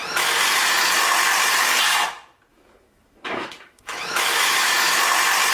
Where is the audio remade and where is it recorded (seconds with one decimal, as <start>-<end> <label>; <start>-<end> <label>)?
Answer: 0.0-2.5 recorded; 2.5-5.0 remade; 5.0-5.5 recorded